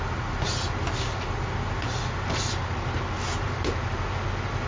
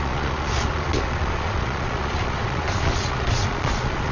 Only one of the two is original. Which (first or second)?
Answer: first